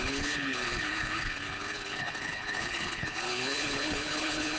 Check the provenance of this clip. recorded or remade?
remade